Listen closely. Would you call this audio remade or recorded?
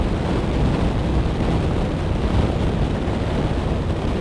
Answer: recorded